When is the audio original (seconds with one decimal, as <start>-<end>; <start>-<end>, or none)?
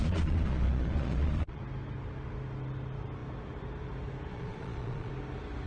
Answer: 1.6-4.3; 5.1-5.7